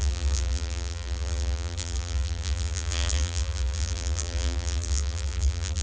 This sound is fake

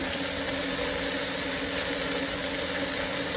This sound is real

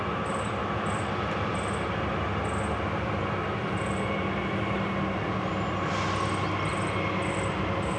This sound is real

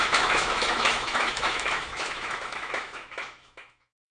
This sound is fake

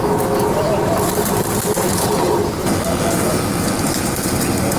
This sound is real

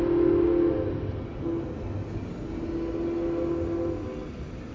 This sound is real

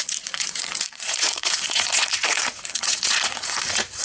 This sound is fake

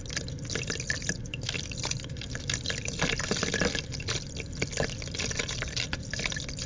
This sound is real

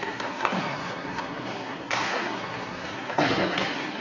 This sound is fake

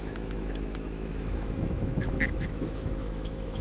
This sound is fake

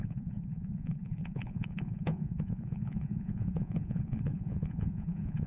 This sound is fake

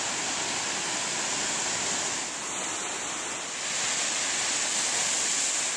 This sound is real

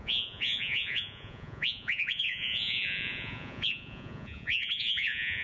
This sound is fake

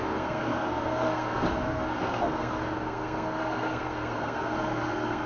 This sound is fake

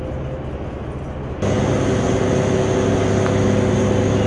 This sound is real